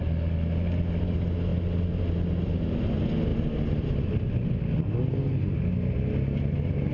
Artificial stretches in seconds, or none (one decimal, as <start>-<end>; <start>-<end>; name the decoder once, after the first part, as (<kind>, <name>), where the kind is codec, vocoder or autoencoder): none